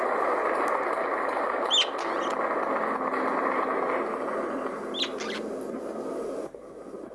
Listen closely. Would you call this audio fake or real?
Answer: real